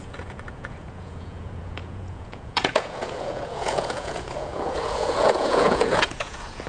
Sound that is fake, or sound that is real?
fake